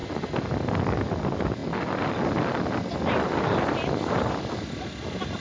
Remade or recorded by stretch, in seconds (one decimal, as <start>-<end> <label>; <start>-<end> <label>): 0.0-5.4 recorded